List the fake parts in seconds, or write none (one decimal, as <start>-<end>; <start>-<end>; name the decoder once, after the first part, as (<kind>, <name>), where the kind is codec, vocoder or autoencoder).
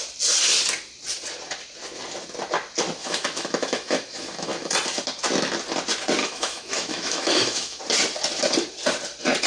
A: 3.0-4.7 (autoencoder, DAC-VAE); 6.2-7.8